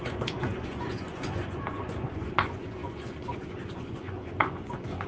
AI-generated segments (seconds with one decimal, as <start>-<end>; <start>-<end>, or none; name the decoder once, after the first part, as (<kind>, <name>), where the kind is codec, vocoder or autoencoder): 0.0-5.1 (vocoder, Vocos)